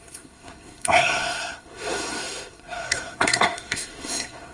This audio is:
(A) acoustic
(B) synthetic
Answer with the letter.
B